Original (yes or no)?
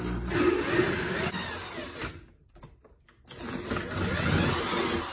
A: yes